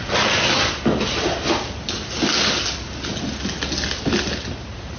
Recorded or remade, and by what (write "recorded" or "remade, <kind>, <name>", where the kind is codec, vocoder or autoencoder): recorded